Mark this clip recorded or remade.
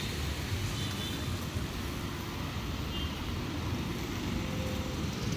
recorded